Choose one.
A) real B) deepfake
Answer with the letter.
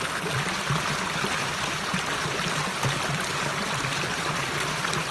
A